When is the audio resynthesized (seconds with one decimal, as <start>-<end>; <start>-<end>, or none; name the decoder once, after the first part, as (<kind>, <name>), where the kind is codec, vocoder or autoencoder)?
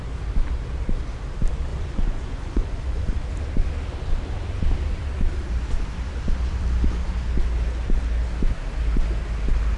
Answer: 1.7-3.1 (vocoder, Vocos)